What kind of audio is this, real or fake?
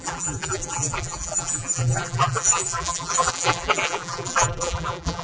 fake